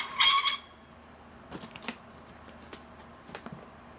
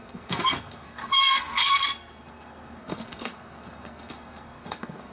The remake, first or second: second